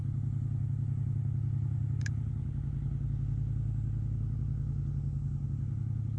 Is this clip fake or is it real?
real